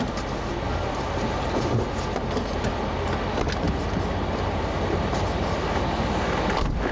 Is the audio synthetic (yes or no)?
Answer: no